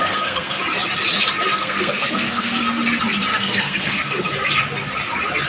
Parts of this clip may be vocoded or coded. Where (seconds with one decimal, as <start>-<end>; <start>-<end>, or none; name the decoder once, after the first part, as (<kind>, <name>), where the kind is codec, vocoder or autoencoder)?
0.0-0.6 (codec, SNAC); 1.5-2.6; 3.3-4.3